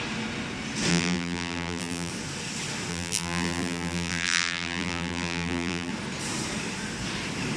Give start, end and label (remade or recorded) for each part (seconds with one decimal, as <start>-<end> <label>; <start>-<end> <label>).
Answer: 0.0-0.9 recorded; 0.9-2.1 remade; 2.1-2.9 recorded; 2.9-5.9 remade; 5.9-7.6 recorded